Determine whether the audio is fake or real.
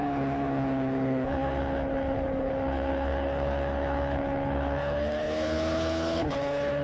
fake